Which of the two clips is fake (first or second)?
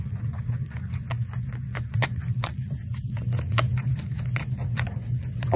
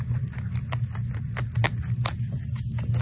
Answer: first